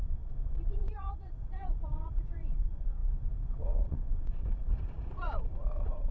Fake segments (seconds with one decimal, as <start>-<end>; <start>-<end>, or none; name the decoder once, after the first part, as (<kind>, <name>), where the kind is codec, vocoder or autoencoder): 0.0-6.1 (vocoder, Vocos)